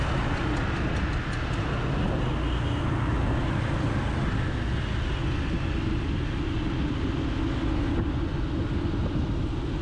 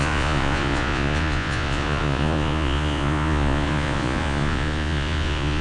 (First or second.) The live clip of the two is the first